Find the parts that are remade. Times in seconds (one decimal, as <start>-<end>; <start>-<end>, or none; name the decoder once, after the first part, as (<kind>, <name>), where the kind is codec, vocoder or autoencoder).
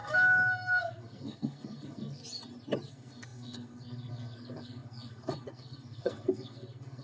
0.0-2.2 (codec, SNAC); 2.9-7.0